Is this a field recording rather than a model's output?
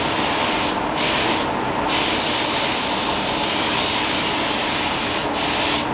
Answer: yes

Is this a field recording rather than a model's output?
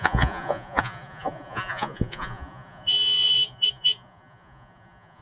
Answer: no